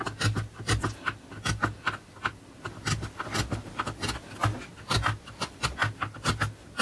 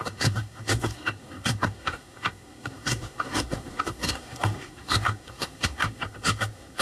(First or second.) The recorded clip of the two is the first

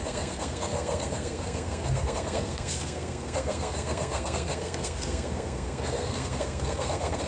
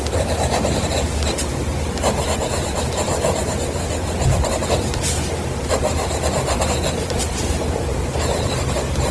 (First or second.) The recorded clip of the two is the second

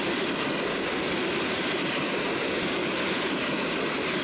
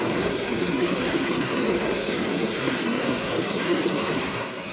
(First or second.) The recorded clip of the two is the first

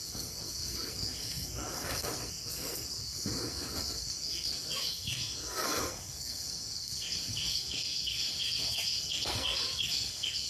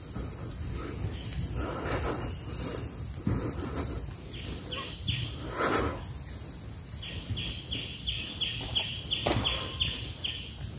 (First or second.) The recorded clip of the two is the second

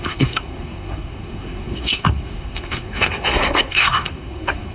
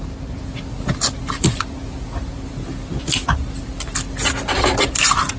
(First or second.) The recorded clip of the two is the second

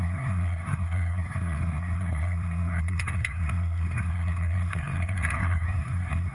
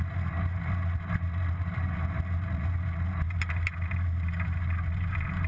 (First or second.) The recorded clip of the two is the second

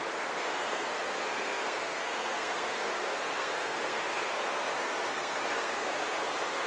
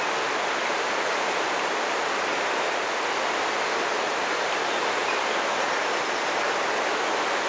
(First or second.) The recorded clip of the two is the second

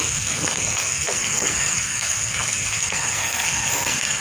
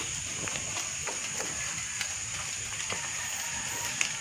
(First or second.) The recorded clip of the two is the second